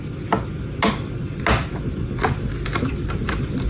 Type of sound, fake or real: real